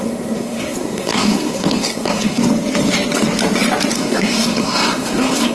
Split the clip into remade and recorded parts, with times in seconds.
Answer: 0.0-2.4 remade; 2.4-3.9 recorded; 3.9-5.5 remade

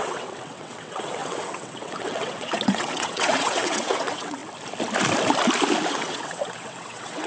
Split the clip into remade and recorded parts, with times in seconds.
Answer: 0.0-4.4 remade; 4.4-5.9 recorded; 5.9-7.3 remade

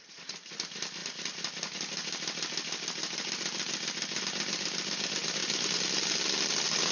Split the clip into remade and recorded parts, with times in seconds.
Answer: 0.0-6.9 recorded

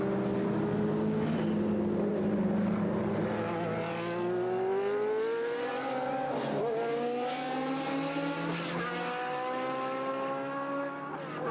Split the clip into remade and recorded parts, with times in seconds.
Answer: 0.0-11.5 recorded